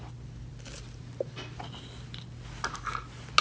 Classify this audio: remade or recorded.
recorded